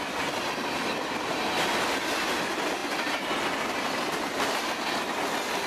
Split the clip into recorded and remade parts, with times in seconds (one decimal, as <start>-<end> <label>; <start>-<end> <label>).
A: 0.0-5.7 recorded